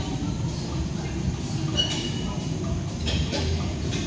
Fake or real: fake